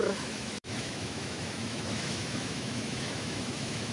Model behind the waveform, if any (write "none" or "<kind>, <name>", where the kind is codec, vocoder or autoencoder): autoencoder, DAC-VAE